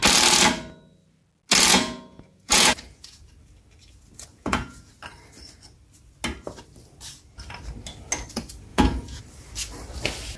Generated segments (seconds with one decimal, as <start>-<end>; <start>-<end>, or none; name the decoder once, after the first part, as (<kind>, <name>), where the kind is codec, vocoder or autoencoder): 1.7-3.3 (vocoder, Vocos); 4.3-4.9; 8.7-9.2